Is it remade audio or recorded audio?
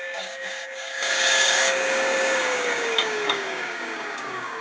remade